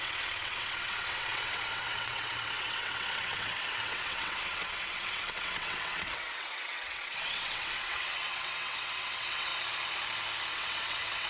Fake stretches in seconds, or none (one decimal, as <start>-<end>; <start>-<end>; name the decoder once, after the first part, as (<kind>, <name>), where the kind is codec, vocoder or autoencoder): 0.0-9.5 (vocoder, WaveNeXt); 10.5-11.3